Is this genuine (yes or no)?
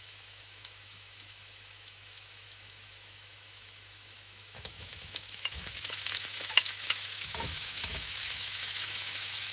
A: no